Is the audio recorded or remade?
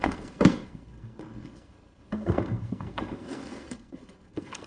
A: remade